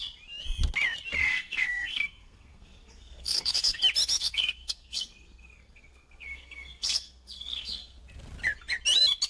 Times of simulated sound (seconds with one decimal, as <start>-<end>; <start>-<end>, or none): 1.2-3.8; 4.2-8.0